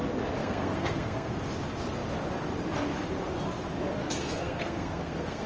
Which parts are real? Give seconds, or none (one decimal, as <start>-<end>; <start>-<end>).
0.0-0.4; 1.3-4.0